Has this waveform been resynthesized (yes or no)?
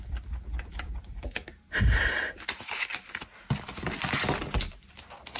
no